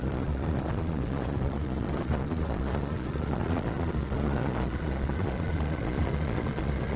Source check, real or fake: fake